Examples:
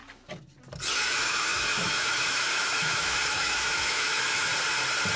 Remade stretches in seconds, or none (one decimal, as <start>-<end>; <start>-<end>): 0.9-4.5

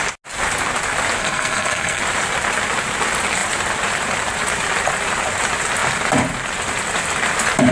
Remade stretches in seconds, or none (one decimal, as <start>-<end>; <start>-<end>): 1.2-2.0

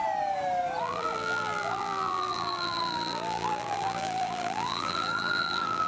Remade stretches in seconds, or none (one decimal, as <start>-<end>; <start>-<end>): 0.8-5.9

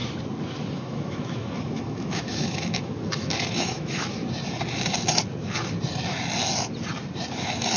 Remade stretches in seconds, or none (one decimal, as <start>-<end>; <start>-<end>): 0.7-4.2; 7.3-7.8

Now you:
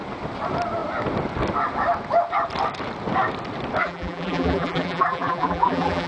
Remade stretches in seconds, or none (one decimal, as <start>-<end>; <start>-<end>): 3.8-6.1

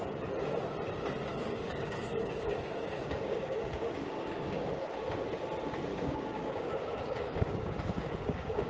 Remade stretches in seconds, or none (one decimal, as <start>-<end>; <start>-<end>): 1.3-4.9; 5.9-8.7